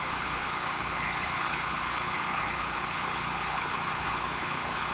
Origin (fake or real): fake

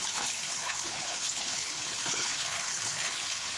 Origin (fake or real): fake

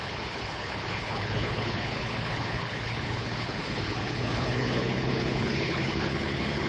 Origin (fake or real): fake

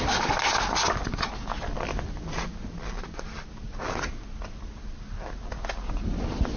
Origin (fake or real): real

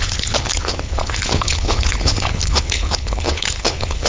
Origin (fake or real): fake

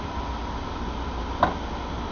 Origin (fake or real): real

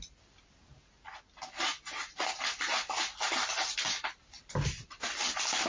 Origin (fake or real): real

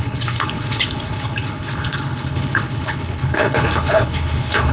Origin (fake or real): fake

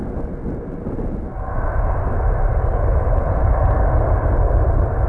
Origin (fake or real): real